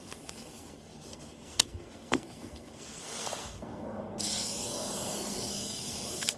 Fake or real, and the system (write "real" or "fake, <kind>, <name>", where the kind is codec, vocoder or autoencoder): fake, codec, SNAC